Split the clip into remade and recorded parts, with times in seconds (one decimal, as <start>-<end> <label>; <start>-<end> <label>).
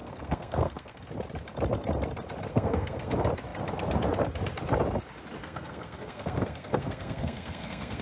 0.0-1.0 remade; 1.0-2.5 recorded; 2.5-3.1 remade; 3.1-5.4 recorded; 5.4-8.0 remade